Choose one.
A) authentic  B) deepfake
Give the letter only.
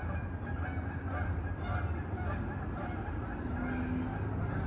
A